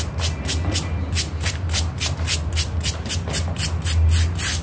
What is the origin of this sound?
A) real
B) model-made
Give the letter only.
A